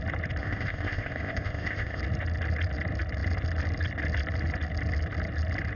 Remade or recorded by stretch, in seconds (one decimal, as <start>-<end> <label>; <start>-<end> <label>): 0.0-0.4 recorded; 0.4-2.0 remade; 2.0-5.8 recorded